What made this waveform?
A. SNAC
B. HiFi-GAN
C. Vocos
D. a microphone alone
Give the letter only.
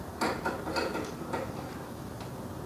D